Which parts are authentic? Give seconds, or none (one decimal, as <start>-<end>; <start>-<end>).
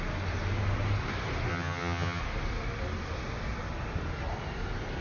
0.0-1.5; 2.2-5.0